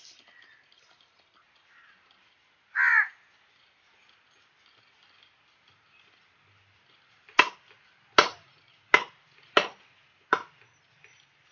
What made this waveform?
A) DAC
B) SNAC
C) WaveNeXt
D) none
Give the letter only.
D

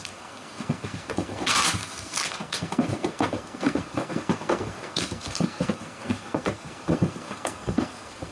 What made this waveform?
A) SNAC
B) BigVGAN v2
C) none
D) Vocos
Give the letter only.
A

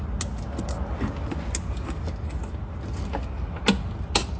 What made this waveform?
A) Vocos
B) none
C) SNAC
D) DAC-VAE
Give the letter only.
B